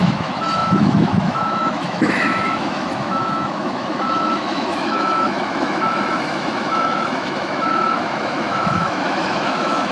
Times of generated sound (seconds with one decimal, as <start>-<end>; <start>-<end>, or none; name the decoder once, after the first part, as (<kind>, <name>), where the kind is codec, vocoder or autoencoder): 0.0-9.9 (autoencoder, DAC-VAE)